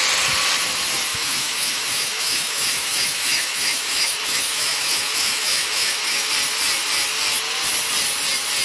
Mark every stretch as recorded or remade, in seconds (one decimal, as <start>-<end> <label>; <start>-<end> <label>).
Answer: 0.0-1.1 recorded; 1.1-6.3 remade; 6.3-8.6 recorded